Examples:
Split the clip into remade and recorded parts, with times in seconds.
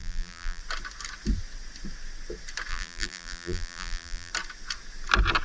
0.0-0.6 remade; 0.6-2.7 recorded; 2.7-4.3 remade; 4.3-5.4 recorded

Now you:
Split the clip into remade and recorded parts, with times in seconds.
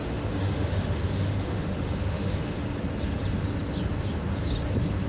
0.0-2.6 remade; 2.6-5.1 recorded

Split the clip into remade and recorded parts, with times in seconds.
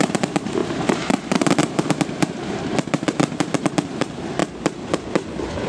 0.0-5.7 remade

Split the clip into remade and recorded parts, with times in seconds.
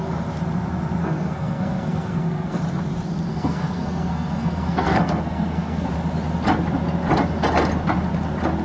0.0-1.0 recorded; 1.0-2.6 remade; 2.6-3.3 recorded; 3.3-5.9 remade; 5.9-8.6 recorded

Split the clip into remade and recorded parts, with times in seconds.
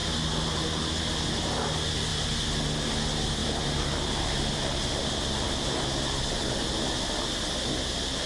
0.0-3.4 recorded; 3.4-6.6 remade; 6.6-8.3 recorded